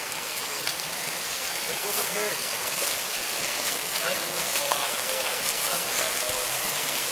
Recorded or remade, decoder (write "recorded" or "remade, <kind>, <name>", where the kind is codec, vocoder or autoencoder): remade, codec, SNAC